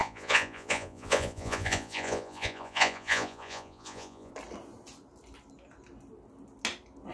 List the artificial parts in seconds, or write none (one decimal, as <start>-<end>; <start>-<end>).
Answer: 0.0-4.3

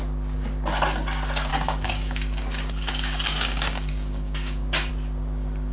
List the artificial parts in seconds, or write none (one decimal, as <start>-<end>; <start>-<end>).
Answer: 1.5-4.9

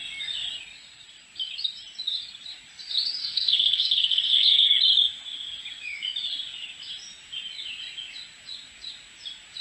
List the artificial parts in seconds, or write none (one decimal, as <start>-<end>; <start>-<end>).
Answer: 3.2-4.7

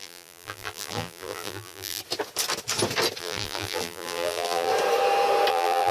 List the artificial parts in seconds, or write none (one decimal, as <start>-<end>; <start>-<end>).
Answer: 0.0-2.0; 3.2-4.7; 5.5-5.9

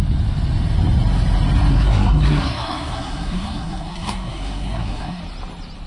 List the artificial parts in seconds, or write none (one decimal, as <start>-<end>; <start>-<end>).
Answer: 1.7-5.2

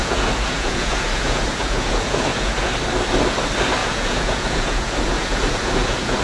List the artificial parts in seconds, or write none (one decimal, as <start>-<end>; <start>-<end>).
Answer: 0.0-2.7; 3.8-6.2

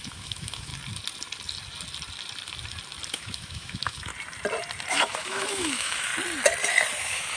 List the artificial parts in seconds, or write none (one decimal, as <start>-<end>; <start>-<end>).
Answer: 0.0-0.7; 3.1-4.1; 4.9-6.1; 7.0-7.4

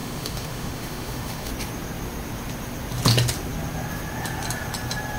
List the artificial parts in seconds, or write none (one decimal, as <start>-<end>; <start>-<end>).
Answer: 0.0-1.5